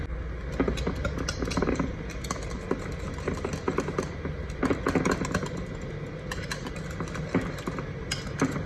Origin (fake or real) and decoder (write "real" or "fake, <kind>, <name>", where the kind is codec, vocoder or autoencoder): real